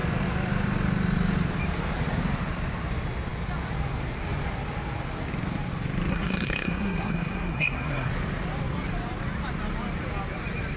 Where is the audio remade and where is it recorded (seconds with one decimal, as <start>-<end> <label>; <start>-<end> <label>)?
0.0-6.1 recorded; 6.1-8.1 remade; 8.1-10.8 recorded